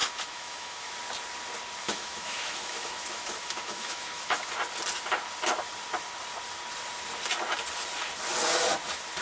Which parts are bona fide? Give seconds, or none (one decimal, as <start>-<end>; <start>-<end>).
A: 0.9-1.8; 4.5-9.2